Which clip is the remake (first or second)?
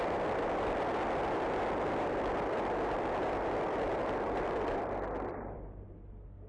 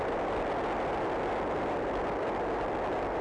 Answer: first